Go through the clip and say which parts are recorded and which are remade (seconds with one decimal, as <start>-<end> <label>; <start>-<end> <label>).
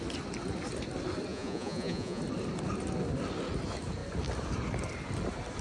0.0-1.3 recorded; 1.3-2.2 remade; 2.2-5.6 recorded